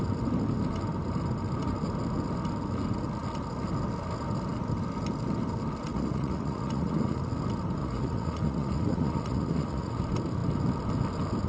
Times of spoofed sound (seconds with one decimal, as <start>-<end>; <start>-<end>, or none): 5.9-7.2; 7.8-10.0